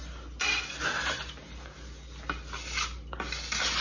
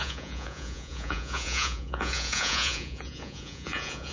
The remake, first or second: second